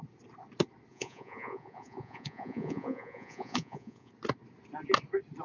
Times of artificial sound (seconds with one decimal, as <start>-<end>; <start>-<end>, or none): 0.9-4.1

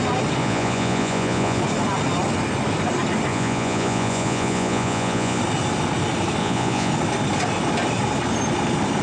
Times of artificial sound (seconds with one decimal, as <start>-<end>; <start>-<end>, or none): 0.4-1.6; 3.3-5.4; 6.4-6.9

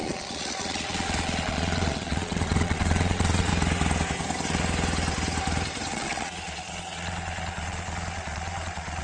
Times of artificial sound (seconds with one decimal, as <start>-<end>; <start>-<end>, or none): 0.0-3.5; 5.9-9.0

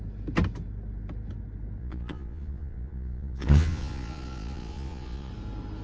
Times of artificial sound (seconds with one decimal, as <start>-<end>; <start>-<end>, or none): 1.8-5.3